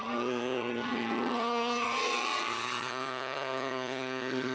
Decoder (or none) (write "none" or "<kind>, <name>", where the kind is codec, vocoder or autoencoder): vocoder, HiFi-GAN